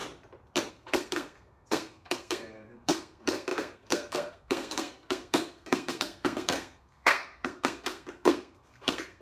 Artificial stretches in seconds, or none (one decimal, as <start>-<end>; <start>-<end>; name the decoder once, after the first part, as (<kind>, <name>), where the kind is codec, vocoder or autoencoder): 0.7-9.2 (codec, SNAC)